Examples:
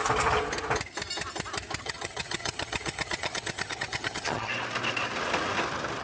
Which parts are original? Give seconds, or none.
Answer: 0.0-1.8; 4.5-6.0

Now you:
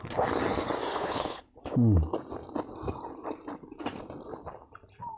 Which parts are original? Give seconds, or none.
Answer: 0.0-0.9; 1.6-5.2

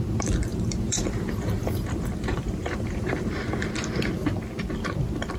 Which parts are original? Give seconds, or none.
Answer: 0.0-0.5; 3.7-5.4

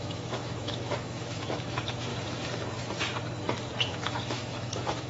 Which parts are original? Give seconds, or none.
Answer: 2.1-3.9

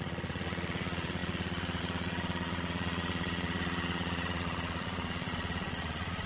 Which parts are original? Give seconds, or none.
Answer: none